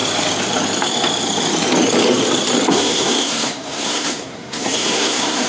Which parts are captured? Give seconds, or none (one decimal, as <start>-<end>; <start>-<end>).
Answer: 0.0-2.7

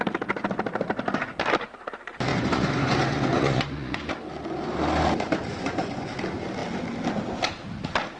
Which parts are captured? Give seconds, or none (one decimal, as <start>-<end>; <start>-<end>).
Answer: 0.0-2.3; 4.1-5.5; 6.1-8.2